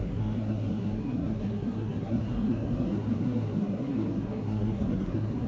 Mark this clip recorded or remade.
remade